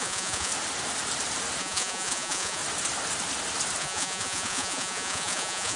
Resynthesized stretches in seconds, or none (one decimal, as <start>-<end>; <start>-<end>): 0.0-0.5; 1.6-2.6; 3.8-5.8